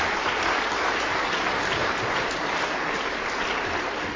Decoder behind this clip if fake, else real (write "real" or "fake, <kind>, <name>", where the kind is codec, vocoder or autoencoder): fake, vocoder, BigVGAN v2